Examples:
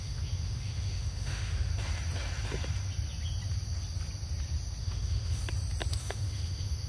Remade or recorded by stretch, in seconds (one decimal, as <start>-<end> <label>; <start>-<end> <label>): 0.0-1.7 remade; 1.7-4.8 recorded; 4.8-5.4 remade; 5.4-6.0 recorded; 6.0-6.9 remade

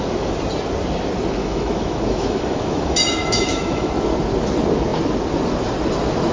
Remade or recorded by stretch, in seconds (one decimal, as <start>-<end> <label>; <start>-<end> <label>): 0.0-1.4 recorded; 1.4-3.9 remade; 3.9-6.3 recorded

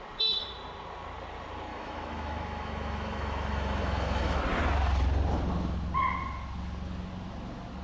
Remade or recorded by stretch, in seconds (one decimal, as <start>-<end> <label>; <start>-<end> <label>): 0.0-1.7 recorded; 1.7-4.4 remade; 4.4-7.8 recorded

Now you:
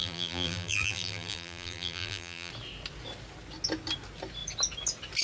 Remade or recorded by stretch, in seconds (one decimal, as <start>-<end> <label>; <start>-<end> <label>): 0.0-2.5 remade; 2.5-5.2 recorded